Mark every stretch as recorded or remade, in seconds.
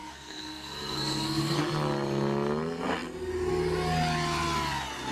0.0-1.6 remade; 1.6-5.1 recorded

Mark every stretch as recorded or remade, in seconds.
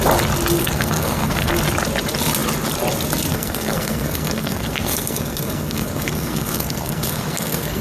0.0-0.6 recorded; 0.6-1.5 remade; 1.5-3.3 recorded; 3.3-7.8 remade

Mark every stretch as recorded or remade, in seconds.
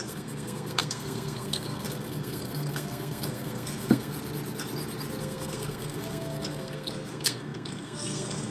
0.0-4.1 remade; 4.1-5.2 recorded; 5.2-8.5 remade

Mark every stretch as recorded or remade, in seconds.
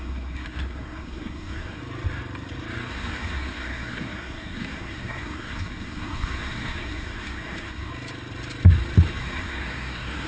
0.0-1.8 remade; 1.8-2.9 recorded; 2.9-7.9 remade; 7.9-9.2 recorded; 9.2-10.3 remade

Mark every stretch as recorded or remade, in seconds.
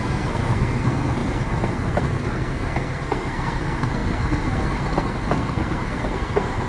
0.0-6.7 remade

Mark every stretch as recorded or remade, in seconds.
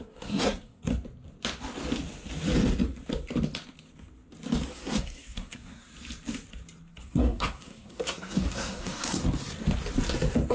0.0-0.9 remade; 0.9-4.7 recorded; 4.7-5.9 remade; 5.9-6.9 recorded; 6.9-9.2 remade; 9.2-10.5 recorded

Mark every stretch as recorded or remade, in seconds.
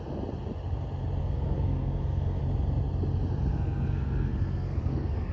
0.0-1.2 recorded; 1.2-2.4 remade; 2.4-3.5 recorded; 3.5-5.3 remade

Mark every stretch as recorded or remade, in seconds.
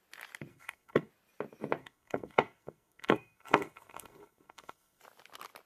0.0-0.5 recorded; 0.5-1.1 remade; 1.1-1.8 recorded; 1.8-5.0 remade; 5.0-5.7 recorded